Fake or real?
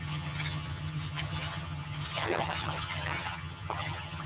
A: fake